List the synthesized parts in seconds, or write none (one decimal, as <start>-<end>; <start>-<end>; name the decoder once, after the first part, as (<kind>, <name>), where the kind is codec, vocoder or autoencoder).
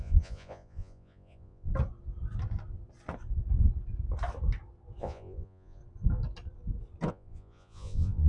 0.0-1.7 (vocoder, Vocos); 5.0-5.8; 7.1-8.3